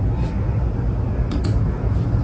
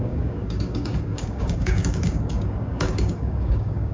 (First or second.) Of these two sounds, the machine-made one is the second